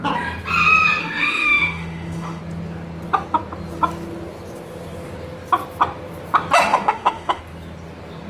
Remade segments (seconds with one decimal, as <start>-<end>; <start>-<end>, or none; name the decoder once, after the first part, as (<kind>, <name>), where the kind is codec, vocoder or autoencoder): 1.0-2.4 (autoencoder, DAC-VAE); 6.7-7.4